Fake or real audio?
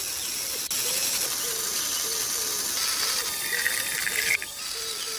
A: fake